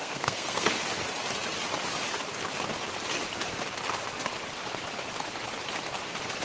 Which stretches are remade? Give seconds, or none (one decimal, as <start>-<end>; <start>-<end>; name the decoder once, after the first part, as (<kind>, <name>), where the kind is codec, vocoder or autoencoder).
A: 0.0-0.7 (codec, SNAC)